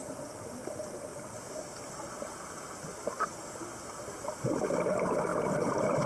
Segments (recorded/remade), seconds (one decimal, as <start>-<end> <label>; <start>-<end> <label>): 0.0-6.1 recorded